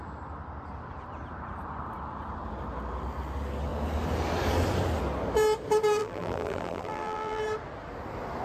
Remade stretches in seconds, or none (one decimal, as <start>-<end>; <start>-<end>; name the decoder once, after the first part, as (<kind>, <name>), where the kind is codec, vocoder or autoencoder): 6.0-7.4 (vocoder, BigVGAN v2)